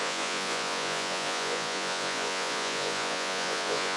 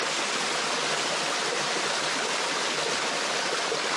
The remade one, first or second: first